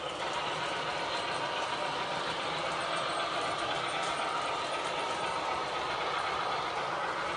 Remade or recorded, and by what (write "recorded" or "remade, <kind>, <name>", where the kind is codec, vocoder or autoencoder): remade, vocoder, BigVGAN v2